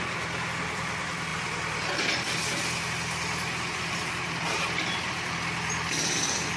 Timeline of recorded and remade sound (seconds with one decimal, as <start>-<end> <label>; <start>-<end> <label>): 0.0-6.6 recorded